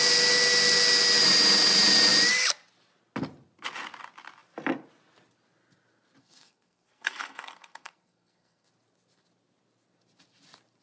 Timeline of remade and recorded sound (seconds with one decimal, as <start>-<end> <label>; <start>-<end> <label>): 0.0-6.2 recorded; 6.2-8.7 remade; 8.7-10.8 recorded